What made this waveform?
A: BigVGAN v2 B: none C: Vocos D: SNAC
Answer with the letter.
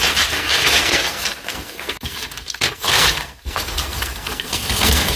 D